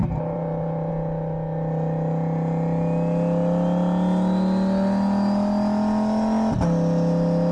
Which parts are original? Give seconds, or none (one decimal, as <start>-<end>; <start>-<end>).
0.9-7.5